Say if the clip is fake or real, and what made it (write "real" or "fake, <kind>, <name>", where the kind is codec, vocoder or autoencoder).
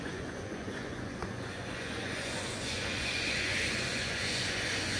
fake, vocoder, Vocos